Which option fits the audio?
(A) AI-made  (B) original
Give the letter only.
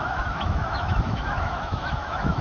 A